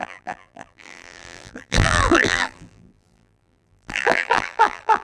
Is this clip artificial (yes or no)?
yes